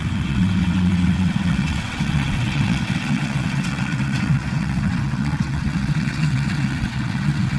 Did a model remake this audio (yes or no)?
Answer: yes